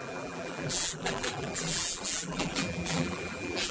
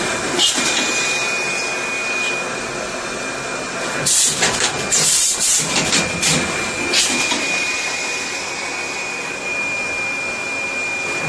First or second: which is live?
second